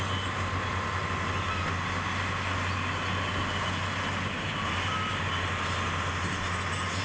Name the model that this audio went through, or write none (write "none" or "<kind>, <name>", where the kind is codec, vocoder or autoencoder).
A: none